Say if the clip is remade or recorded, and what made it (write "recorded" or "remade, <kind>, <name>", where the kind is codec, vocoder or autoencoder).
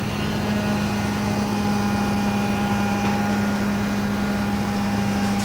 recorded